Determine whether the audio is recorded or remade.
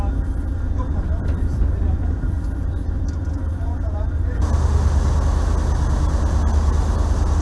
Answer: recorded